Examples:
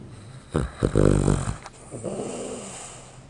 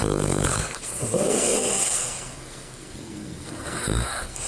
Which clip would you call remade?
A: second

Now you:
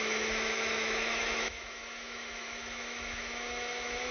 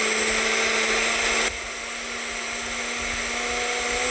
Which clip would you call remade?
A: first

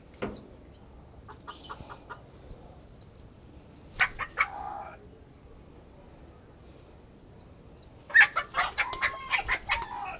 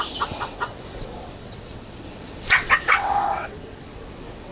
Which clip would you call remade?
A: second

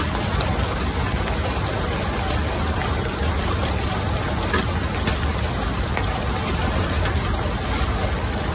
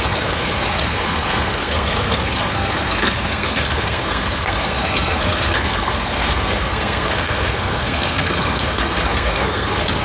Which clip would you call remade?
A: second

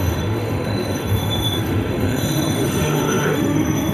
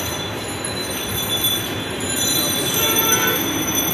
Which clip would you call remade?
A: first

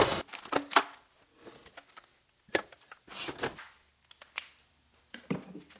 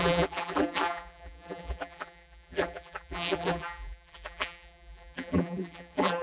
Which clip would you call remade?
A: second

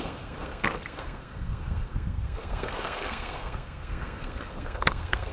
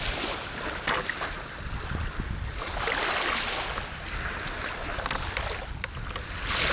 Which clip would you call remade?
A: first